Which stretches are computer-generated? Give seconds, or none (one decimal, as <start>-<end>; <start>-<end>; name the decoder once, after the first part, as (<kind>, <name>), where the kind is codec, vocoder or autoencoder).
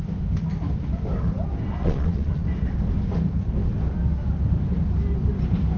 1.8-2.4 (vocoder, WaveNeXt)